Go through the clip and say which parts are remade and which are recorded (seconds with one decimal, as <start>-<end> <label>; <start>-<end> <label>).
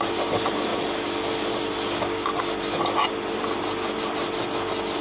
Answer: 0.0-5.0 recorded